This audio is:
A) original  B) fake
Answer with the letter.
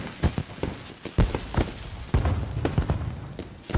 A